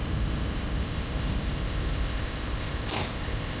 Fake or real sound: fake